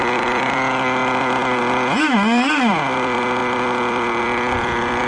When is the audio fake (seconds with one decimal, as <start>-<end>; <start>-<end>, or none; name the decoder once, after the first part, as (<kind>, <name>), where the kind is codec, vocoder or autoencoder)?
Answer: 0.0-5.1 (vocoder, BigVGAN v2)